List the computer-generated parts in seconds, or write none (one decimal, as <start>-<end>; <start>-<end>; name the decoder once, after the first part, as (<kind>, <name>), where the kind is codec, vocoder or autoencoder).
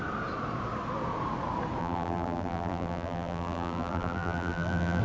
1.8-5.0 (vocoder, BigVGAN v2)